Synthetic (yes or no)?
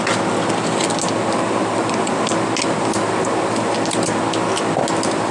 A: no